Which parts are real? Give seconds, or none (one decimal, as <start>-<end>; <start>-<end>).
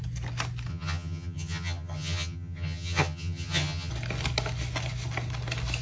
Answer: 0.0-0.7; 3.9-5.8